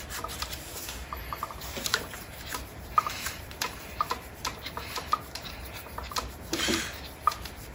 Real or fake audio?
fake